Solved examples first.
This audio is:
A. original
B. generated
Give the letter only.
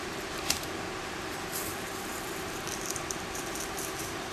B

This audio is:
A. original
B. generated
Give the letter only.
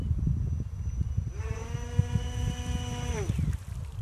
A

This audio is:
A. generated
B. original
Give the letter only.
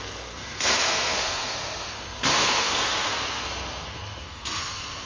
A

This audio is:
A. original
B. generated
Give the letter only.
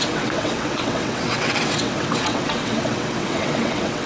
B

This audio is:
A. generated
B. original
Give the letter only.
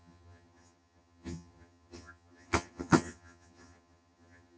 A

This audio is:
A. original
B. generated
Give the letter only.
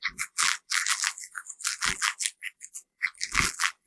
B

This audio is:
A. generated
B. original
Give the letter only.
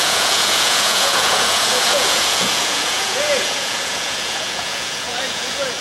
A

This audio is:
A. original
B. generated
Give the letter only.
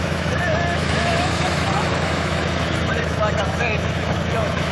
B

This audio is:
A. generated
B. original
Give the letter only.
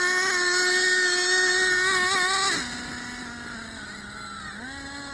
B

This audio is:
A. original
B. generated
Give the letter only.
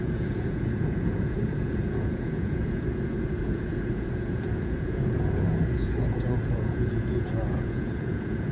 B